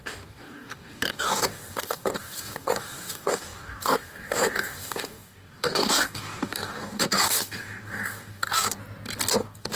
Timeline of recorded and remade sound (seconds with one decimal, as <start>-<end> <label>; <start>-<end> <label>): 0.0-8.8 remade; 8.8-9.3 recorded; 9.3-9.8 remade